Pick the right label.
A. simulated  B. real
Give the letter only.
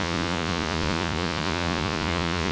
A